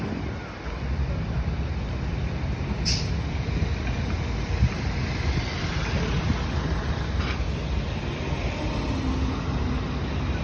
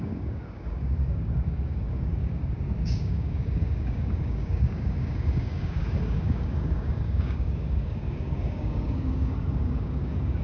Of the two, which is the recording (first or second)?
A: first